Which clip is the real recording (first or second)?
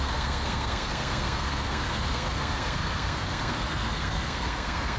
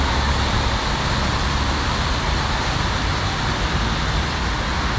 second